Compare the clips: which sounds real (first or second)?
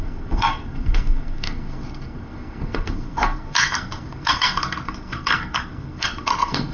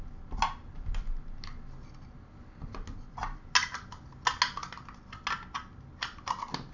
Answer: second